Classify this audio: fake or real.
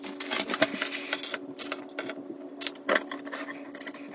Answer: real